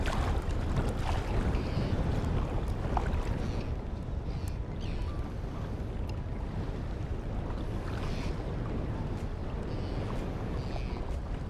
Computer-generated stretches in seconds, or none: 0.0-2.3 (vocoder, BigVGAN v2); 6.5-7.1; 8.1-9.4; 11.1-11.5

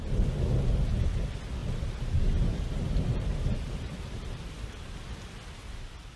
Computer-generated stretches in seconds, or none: 1.6-4.8 (vocoder, BigVGAN v2)

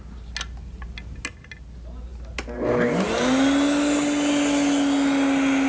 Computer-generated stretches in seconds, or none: none

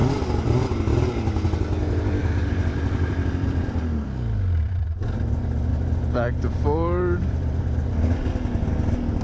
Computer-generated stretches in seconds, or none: 0.0-0.7 (vocoder, BigVGAN v2); 2.2-4.8; 5.7-7.6

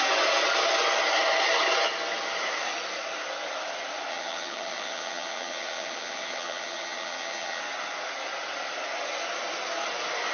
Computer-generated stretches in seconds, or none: 4.1-7.6 (vocoder, HiFi-GAN)

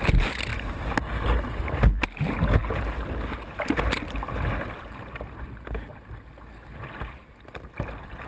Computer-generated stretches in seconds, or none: none